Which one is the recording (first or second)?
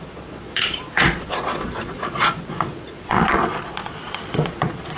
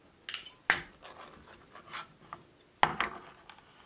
second